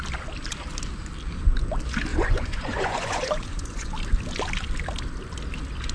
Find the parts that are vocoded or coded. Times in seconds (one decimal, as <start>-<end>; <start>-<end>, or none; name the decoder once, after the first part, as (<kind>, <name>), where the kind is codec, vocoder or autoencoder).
2.1-3.9 (vocoder, Vocos)